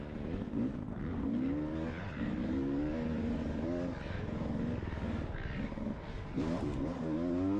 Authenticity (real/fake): fake